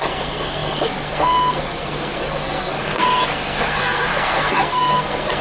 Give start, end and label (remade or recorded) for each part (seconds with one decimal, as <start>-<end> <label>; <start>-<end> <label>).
0.0-5.4 remade